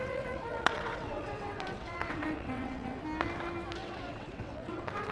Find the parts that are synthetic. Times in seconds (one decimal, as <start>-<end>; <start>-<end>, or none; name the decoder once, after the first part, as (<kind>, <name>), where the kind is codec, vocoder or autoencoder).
0.0-3.0 (vocoder, WaveNeXt); 3.8-5.1